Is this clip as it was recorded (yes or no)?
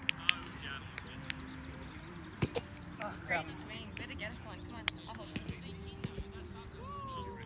yes